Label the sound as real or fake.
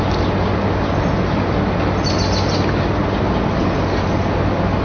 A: real